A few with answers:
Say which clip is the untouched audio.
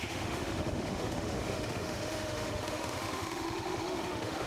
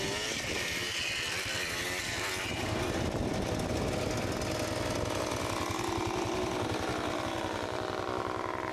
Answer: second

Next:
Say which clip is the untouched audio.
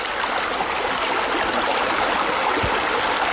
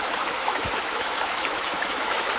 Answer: first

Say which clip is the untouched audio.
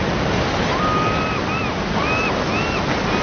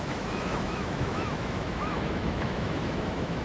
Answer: first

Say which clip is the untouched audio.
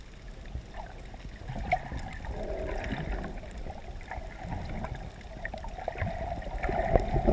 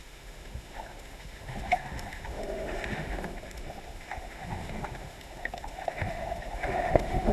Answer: first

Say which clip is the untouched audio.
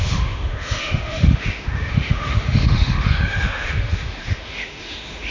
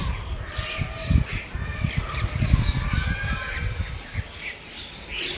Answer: second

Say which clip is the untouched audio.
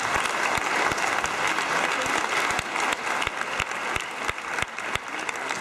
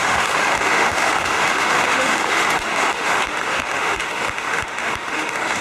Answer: first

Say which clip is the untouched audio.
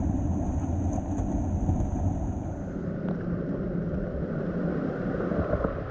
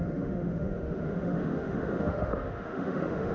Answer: first